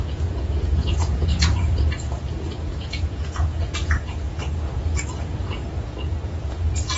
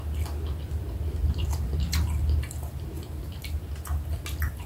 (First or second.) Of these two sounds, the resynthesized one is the first